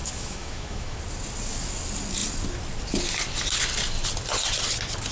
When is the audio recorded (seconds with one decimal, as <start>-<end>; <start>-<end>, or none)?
1.0-5.1